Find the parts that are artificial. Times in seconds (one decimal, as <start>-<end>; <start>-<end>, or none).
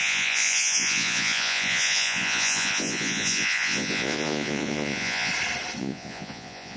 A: 0.0-5.3; 5.8-6.8